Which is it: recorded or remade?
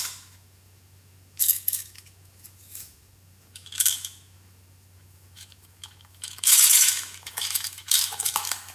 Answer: remade